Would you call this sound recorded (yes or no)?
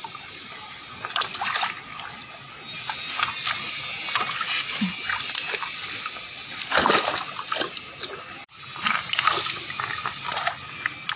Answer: yes